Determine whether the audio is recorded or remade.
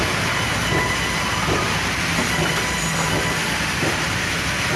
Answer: recorded